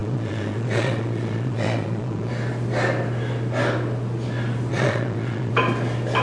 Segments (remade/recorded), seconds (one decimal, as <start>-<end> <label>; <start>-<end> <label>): 0.0-2.3 remade; 2.3-4.7 recorded; 4.7-5.5 remade; 5.5-6.2 recorded